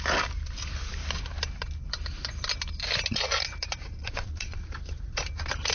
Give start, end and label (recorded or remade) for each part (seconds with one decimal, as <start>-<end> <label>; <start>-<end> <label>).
0.0-4.0 recorded; 4.0-4.7 remade; 4.7-5.7 recorded